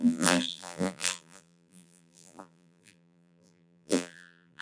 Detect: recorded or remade remade